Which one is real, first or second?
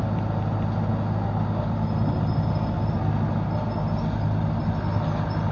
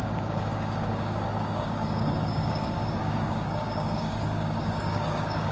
first